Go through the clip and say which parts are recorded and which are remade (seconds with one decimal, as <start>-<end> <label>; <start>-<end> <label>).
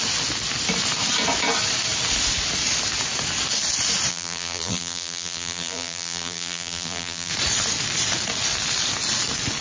0.0-4.1 recorded; 4.1-7.3 remade; 7.3-9.6 recorded